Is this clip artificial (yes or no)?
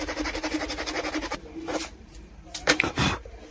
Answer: yes